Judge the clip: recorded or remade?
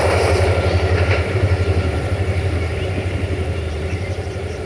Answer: remade